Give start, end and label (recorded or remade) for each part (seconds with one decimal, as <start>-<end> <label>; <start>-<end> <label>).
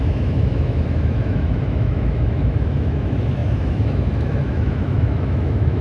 0.0-5.8 remade